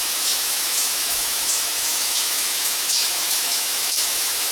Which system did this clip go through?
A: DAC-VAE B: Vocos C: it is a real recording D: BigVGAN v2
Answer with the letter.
A